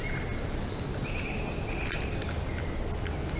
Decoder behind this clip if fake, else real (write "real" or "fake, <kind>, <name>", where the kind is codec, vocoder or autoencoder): real